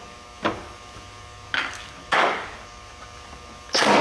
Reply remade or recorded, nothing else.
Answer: remade